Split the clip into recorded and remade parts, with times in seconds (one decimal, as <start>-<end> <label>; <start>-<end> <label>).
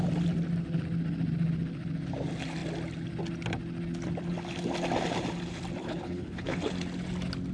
0.0-5.8 recorded; 5.8-6.6 remade; 6.6-7.5 recorded